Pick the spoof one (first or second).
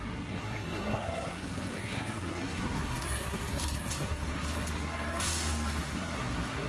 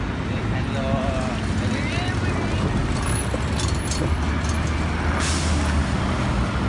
first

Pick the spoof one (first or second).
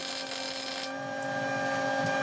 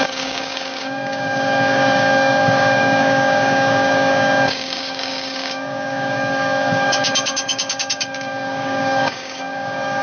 second